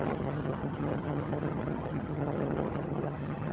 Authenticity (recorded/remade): remade